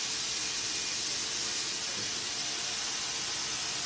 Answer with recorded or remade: recorded